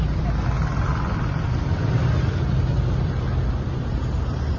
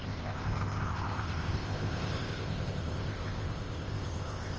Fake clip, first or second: second